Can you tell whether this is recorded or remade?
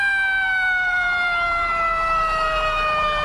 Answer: remade